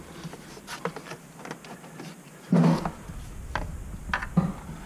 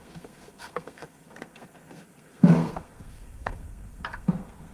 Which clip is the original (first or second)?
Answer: first